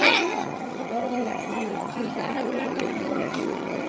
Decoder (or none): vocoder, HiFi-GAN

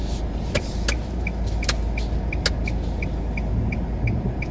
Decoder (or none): none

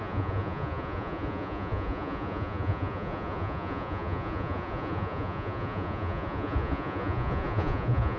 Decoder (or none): vocoder, Vocos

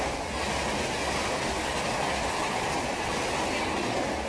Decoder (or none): none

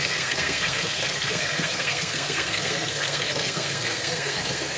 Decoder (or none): codec, SNAC